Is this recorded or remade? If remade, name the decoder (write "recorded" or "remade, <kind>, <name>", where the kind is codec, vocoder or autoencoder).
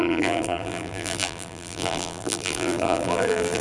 remade, vocoder, BigVGAN v2